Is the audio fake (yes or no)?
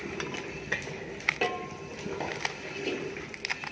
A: no